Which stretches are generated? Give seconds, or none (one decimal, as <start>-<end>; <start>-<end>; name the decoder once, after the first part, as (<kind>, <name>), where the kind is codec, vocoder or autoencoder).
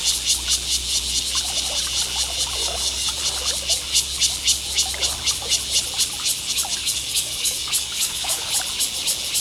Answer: 2.6-3.2 (codec, DAC); 6.8-8.5